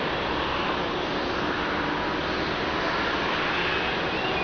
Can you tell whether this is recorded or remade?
recorded